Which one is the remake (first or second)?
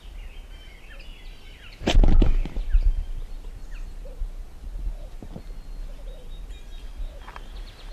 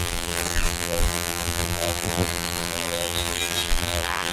second